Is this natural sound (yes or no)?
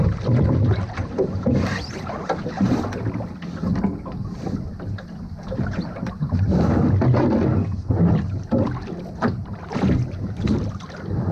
yes